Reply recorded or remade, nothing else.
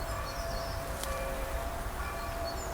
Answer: remade